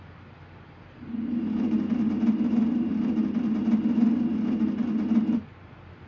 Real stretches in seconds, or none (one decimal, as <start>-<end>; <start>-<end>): 0.0-6.1